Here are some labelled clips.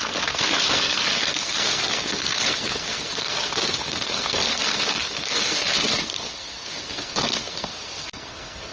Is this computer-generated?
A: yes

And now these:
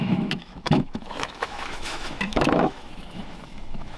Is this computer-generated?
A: yes